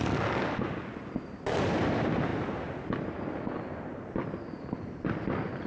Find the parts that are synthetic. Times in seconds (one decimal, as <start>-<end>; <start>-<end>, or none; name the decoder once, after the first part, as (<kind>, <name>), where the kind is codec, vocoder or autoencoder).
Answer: none